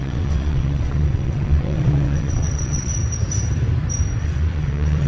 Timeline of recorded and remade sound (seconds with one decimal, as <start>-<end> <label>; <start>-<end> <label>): 0.0-2.9 remade; 2.9-4.2 recorded; 4.2-5.1 remade